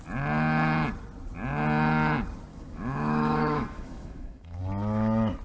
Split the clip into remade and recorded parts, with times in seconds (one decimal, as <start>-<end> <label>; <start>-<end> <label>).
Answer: 0.0-2.5 recorded; 2.5-4.6 remade; 4.6-5.4 recorded